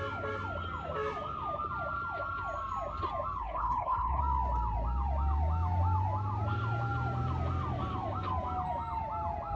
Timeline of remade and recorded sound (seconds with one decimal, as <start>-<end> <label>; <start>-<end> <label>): 0.0-3.4 recorded; 3.4-4.2 remade; 4.2-9.6 recorded